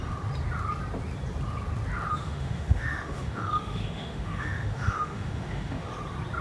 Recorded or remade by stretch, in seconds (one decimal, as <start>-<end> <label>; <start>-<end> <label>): 0.0-2.1 recorded; 2.1-5.9 remade; 5.9-6.4 recorded